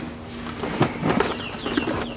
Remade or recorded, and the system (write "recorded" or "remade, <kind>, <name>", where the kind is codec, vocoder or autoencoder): recorded